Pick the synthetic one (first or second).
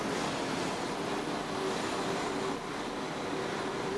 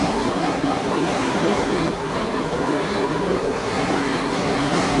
second